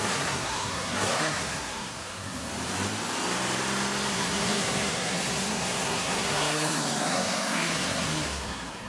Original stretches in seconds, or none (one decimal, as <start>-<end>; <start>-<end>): 2.5-4.1